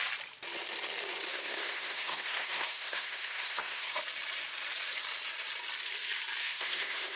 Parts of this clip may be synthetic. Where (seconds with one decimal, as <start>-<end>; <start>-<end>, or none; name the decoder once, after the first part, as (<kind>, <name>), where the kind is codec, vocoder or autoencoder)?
1.3-3.9 (codec, SNAC); 6.4-7.2